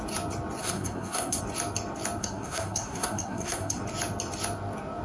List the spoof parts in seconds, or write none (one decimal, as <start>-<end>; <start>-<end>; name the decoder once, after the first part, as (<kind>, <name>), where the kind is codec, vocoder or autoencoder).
0.6-1.4 (codec, SNAC); 2.2-3.8